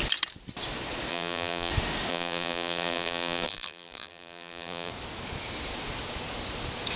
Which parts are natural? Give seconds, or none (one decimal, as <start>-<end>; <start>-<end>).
0.0-1.1; 1.7-2.1; 4.9-7.0